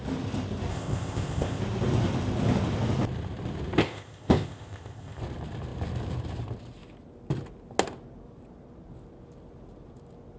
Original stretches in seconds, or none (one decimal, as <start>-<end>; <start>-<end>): 0.0-0.7; 1.6-3.8; 5.2-10.4